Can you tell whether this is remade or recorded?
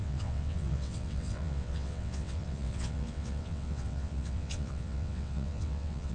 remade